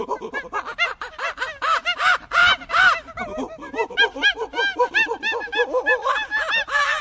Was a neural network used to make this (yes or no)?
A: yes